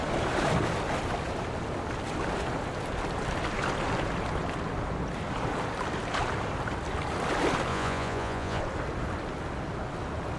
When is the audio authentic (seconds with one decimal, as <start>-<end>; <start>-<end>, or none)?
0.0-7.7; 8.6-10.4